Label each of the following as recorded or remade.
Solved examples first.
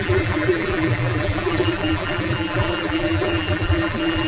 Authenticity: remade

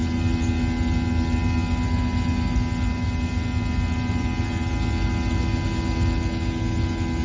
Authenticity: recorded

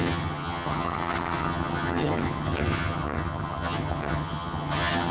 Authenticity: remade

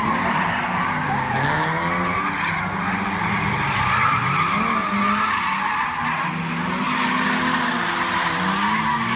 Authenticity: recorded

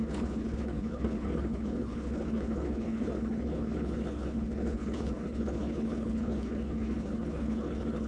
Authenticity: remade